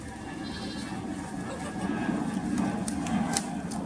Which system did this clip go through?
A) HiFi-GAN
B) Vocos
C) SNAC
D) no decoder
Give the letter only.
D